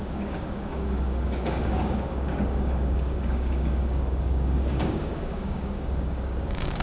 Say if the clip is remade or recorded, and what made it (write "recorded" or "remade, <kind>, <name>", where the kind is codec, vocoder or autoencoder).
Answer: remade, codec, DAC